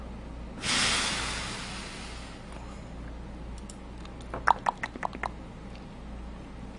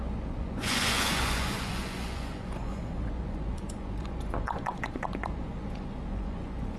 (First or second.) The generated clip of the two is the second